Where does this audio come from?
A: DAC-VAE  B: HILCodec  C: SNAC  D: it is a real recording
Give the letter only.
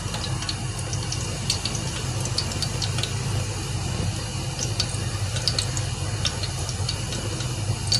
D